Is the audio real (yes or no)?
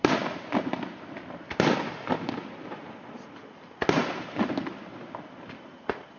yes